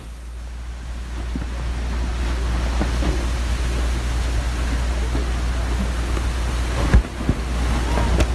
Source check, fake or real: real